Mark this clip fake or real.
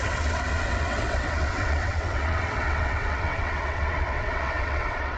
fake